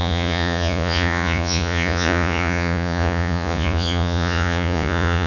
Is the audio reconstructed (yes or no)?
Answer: yes